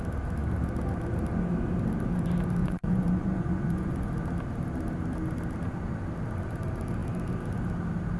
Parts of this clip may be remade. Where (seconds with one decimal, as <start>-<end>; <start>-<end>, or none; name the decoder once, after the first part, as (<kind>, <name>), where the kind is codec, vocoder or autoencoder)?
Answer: 2.6-4.1 (vocoder, Vocos)